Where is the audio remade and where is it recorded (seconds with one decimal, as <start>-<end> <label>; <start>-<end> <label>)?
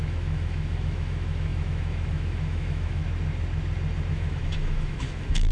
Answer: 0.0-3.0 remade; 3.0-4.1 recorded; 4.1-5.5 remade